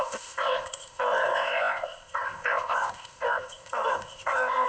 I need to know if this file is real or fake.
fake